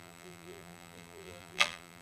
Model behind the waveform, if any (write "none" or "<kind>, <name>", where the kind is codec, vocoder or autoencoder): vocoder, BigVGAN v2